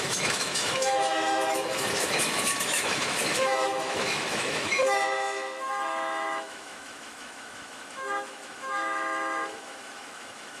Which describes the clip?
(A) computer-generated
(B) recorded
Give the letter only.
A